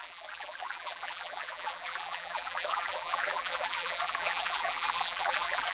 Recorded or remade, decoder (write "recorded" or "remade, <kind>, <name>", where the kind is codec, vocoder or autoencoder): remade, vocoder, BigVGAN v2